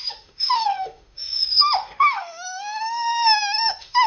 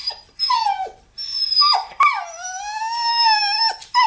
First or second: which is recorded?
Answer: second